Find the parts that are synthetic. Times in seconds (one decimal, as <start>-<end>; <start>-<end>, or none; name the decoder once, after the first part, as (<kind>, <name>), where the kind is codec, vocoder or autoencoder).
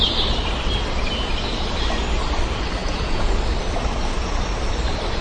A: 2.8-3.3 (vocoder, Vocos)